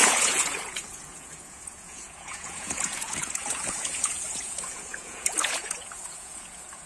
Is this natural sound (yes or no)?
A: no